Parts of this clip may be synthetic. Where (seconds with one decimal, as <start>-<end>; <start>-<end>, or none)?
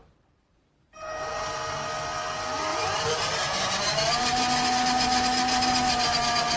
0.0-1.3; 2.7-4.1